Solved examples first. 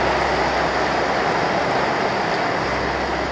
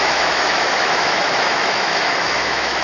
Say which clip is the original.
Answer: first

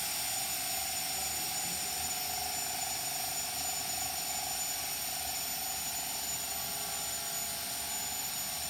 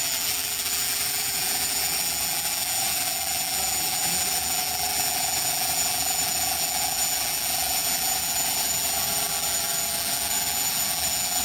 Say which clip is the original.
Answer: first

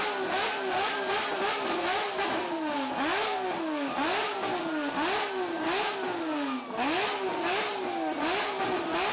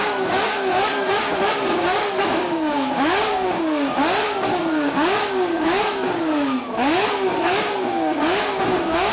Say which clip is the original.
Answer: first